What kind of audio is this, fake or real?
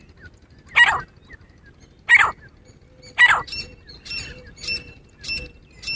real